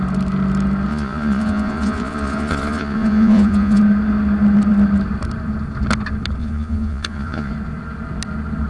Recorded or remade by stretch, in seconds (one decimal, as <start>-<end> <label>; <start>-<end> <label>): 0.0-0.9 recorded; 0.9-3.8 remade; 3.8-6.4 recorded; 6.4-7.5 remade; 7.5-8.7 recorded